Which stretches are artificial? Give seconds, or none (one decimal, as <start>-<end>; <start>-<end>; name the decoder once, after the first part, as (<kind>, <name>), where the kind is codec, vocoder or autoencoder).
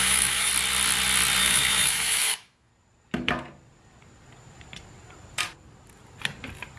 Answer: 0.0-0.5 (autoencoder, DAC-VAE); 1.4-2.7